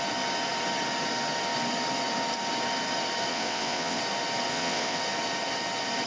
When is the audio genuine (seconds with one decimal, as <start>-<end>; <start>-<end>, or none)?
0.0-3.3; 4.0-4.5; 5.0-6.1